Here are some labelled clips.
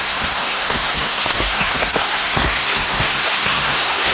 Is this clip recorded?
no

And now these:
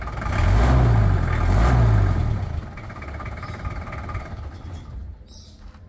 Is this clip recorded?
yes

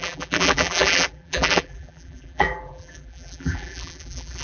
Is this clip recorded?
no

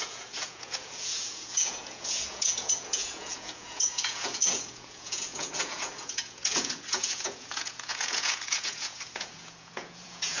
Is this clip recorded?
no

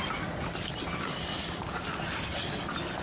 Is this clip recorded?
yes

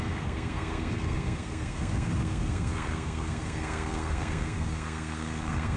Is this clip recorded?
no